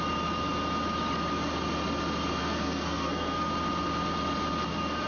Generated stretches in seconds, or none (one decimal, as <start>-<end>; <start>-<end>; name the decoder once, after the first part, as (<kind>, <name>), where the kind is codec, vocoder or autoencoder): 2.4-3.5 (codec, SNAC)